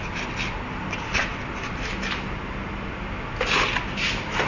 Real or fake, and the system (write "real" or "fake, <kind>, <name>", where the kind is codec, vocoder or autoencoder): real